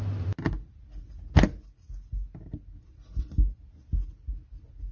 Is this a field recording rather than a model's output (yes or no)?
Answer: yes